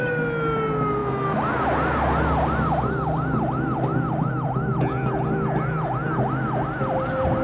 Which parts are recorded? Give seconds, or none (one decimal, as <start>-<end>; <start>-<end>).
0.0-7.4

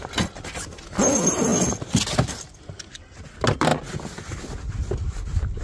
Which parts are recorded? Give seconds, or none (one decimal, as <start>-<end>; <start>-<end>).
0.0-5.6

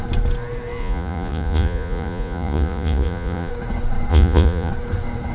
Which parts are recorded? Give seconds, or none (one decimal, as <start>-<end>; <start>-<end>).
0.0-0.8; 3.5-4.1; 4.7-5.3